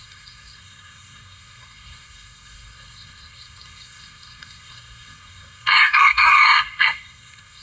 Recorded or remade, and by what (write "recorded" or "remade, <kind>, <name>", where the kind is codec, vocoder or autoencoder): remade, codec, SNAC